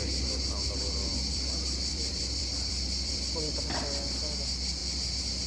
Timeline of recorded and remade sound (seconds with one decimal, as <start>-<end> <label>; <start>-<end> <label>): 0.0-1.1 recorded; 1.1-3.5 remade; 3.5-5.5 recorded